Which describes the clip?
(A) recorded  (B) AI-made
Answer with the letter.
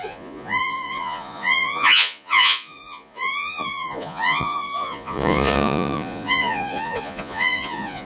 B